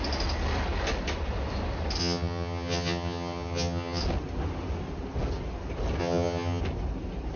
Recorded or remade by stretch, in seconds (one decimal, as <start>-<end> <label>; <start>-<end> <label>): 0.0-2.0 recorded; 2.0-4.0 remade; 4.0-6.0 recorded; 6.0-6.6 remade; 6.6-7.4 recorded